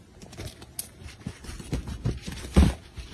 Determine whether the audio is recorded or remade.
recorded